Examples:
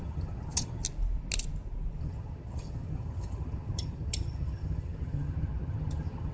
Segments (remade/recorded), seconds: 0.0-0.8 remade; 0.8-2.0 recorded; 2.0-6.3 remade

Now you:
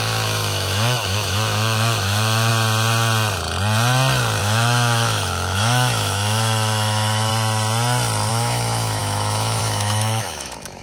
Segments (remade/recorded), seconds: 0.0-2.5 remade; 2.5-4.4 recorded; 4.4-7.3 remade; 7.3-8.3 recorded; 8.3-10.8 remade